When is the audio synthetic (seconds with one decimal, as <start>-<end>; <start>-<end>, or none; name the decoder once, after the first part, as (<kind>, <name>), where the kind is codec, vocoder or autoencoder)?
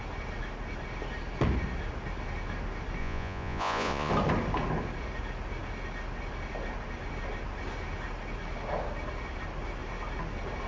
3.0-4.1 (vocoder, Vocos)